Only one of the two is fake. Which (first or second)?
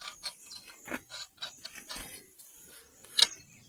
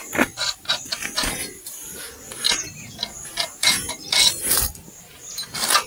first